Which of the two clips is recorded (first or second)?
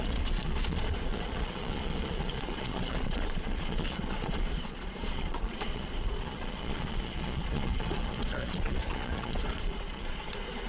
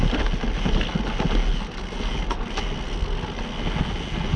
second